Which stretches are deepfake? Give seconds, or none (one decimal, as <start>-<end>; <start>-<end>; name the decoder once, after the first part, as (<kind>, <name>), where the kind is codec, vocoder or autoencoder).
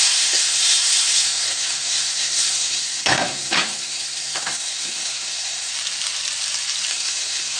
0.0-5.7 (codec, SNAC); 6.9-7.6